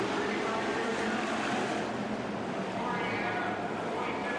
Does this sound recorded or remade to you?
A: recorded